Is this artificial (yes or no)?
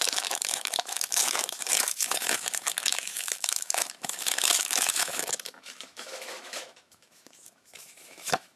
yes